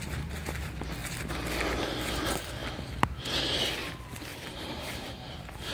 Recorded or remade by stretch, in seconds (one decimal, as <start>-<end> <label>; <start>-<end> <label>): 0.0-4.3 recorded; 4.3-5.7 remade